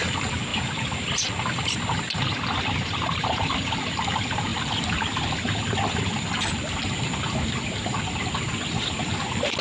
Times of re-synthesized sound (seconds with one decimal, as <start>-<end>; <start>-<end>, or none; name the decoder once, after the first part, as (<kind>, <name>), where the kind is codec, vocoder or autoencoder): none